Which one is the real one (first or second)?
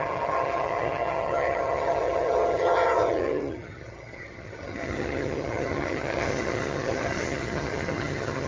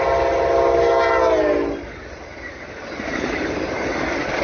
second